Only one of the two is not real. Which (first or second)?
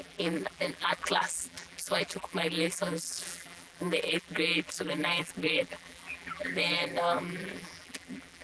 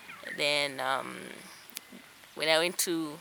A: first